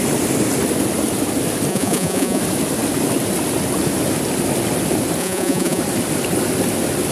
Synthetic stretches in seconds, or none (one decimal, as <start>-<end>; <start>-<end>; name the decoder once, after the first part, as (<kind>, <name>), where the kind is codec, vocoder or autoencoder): 1.7-2.4 (vocoder, Vocos); 5.2-5.8